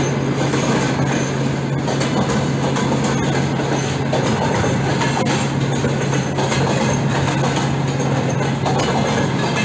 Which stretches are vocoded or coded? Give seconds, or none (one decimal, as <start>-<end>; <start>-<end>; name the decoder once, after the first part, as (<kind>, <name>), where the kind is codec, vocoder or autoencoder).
none